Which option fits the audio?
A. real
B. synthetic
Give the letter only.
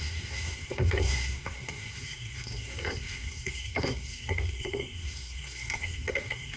B